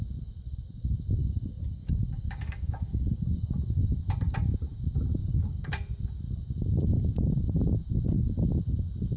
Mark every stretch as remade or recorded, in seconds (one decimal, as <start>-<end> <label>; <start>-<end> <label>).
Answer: 0.0-1.2 recorded; 1.2-4.0 remade; 4.0-5.2 recorded; 5.2-5.7 remade; 5.7-9.2 recorded